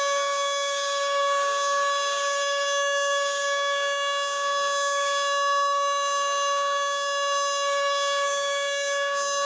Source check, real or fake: fake